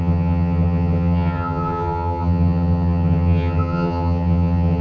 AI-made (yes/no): yes